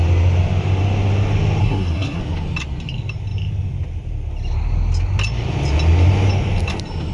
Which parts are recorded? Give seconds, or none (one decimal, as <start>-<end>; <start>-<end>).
0.0-1.6; 2.2-7.1